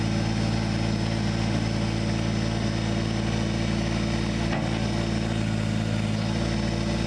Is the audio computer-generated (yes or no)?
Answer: no